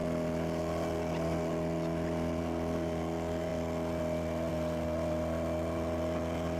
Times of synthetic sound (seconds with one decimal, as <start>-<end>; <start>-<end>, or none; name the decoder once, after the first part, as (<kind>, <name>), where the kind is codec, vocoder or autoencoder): none